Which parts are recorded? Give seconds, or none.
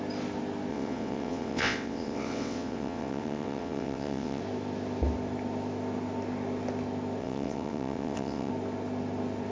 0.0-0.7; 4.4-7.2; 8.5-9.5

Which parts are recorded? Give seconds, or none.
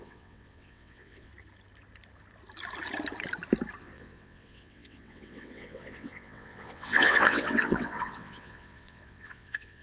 1.3-3.8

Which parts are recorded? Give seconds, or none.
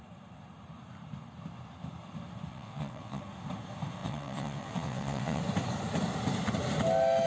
0.0-2.5; 3.2-4.0; 5.4-7.3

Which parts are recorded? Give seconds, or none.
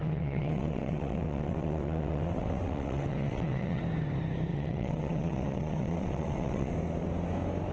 3.8-4.5; 6.7-7.7